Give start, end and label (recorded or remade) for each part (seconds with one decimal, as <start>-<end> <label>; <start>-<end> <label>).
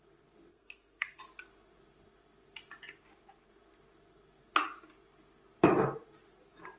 0.0-0.5 recorded; 0.5-1.2 remade; 1.2-6.8 recorded